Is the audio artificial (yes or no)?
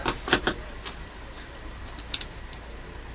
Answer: no